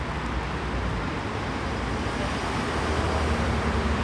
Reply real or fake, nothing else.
real